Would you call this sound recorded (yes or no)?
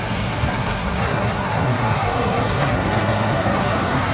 no